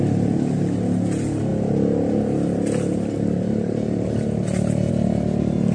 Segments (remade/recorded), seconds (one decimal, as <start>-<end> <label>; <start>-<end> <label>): 0.0-5.7 recorded